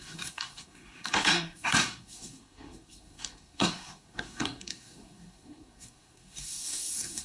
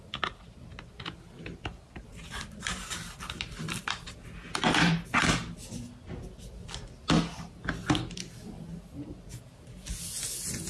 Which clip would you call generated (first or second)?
first